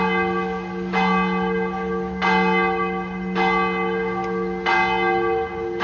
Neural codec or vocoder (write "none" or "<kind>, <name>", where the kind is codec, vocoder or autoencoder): none